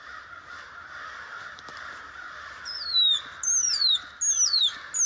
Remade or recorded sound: recorded